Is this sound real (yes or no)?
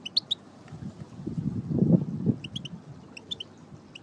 yes